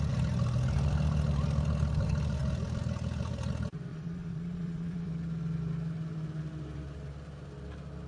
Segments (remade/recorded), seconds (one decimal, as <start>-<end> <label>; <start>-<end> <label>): 0.0-3.9 recorded; 3.9-5.1 remade; 5.1-8.1 recorded